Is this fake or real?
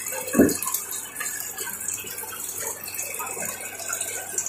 real